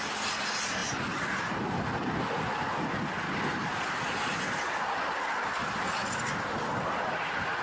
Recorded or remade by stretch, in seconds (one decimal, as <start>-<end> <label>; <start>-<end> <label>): 0.0-7.6 recorded